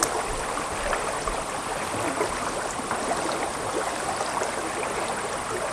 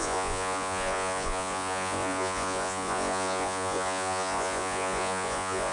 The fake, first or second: second